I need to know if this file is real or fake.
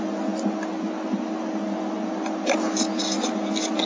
real